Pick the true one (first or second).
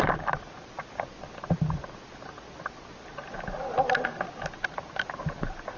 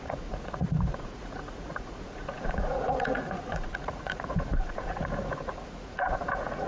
first